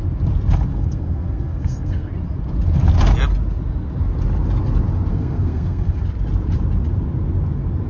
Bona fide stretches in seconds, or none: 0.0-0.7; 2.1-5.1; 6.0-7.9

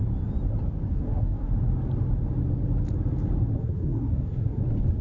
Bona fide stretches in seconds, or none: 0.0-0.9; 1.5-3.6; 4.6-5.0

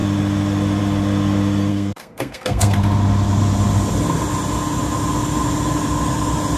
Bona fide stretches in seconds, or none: 0.0-1.7; 2.8-6.6

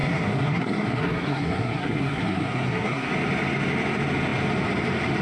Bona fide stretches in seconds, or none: 3.1-5.2